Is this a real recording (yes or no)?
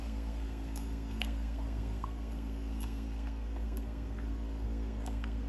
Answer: no